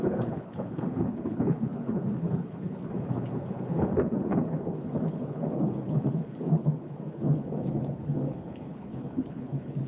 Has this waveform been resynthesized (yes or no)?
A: yes